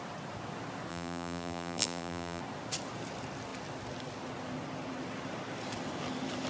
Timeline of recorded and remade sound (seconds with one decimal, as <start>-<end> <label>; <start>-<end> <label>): 0.0-0.9 recorded; 0.9-2.4 remade; 2.4-6.5 recorded